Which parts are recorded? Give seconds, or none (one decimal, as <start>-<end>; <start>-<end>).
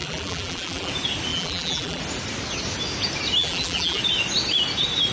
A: 0.9-1.3; 2.0-3.4; 4.0-5.1